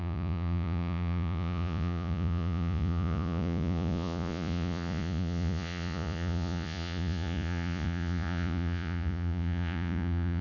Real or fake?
fake